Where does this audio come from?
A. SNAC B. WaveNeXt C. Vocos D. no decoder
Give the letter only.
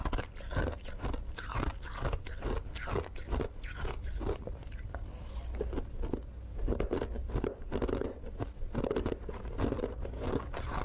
D